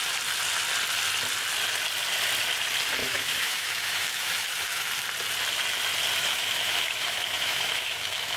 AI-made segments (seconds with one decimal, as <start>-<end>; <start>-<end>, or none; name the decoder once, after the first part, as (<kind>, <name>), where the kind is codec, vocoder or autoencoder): 3.0-4.9 (autoencoder, DAC-VAE); 6.2-8.4